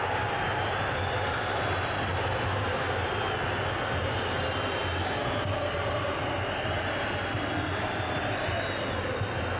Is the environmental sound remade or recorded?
recorded